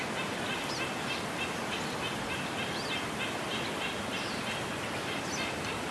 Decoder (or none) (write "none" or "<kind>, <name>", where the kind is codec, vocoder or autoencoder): none